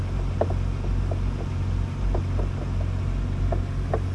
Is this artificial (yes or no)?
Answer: no